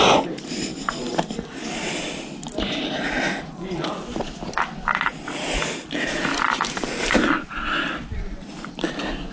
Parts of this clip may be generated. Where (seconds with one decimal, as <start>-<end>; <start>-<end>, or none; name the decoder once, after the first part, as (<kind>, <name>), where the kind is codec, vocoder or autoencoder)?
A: none